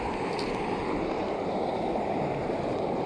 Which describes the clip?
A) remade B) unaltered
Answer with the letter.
B